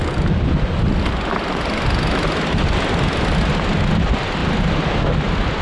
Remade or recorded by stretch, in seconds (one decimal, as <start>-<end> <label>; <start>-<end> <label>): 0.0-5.6 recorded